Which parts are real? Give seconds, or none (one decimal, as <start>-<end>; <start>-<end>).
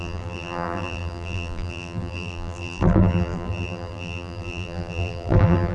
none